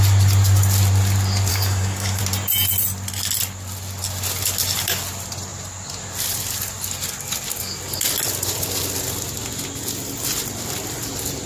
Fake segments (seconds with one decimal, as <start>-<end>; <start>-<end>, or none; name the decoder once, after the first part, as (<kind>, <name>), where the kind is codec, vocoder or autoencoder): 1.5-2.2 (codec, DAC)